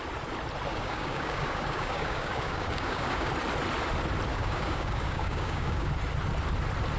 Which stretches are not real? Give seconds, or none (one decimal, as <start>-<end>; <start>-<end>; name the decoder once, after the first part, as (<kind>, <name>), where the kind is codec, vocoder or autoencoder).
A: 0.7-3.3 (codec, DAC); 4.3-5.9